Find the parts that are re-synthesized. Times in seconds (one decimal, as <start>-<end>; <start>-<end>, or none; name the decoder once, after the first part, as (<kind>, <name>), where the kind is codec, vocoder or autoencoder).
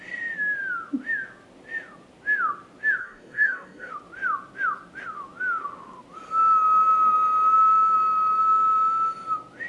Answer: 3.0-3.9 (codec, DAC)